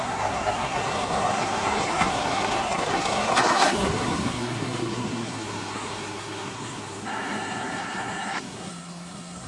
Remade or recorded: remade